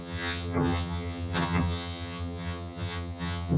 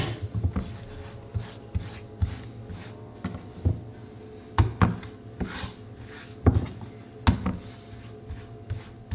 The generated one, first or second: first